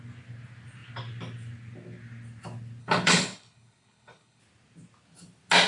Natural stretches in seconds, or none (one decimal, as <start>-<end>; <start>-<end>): 0.0-2.8; 4.4-5.7